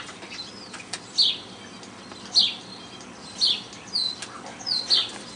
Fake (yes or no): no